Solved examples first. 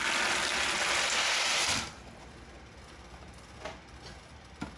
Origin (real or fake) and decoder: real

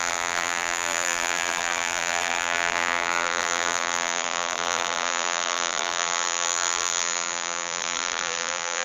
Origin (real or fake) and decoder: fake, vocoder, BigVGAN v2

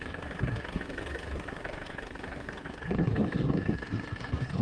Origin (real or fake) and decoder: fake, codec, SNAC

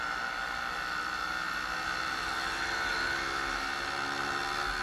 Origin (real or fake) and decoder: real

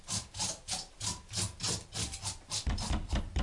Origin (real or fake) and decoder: real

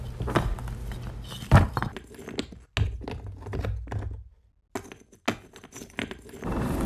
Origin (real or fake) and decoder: real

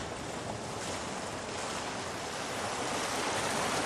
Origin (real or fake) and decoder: real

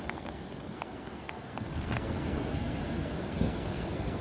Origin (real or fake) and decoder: fake, codec, SNAC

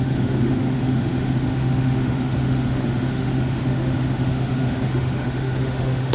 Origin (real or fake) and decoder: fake, autoencoder, DAC-VAE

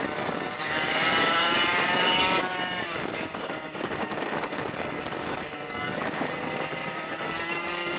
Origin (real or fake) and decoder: fake, codec, DAC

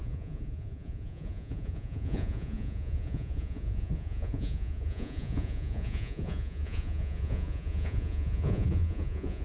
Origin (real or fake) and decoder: fake, vocoder, Vocos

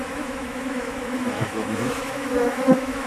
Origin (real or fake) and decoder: fake, autoencoder, DAC-VAE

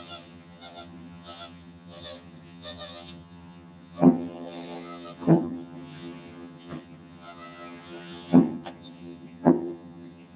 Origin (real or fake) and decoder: fake, vocoder, HiFi-GAN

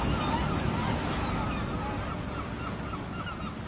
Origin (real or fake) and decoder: real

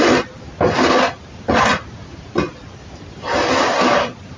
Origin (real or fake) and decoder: real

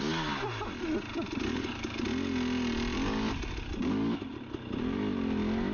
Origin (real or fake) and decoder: real